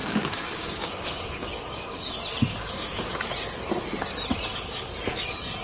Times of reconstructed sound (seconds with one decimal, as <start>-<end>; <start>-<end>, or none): 0.0-2.1; 2.5-3.2